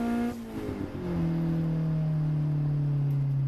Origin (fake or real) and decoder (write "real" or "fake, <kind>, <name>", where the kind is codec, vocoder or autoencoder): real